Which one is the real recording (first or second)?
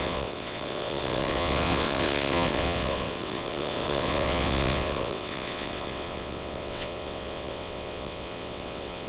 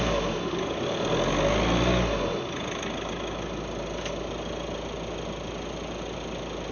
second